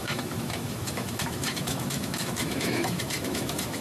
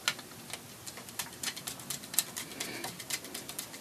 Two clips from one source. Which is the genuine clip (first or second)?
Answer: second